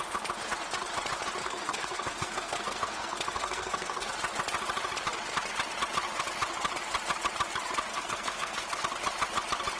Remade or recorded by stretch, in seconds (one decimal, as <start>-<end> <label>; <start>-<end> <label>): 0.0-1.4 recorded; 1.4-4.1 remade; 4.1-7.9 recorded; 7.9-8.8 remade; 8.8-9.8 recorded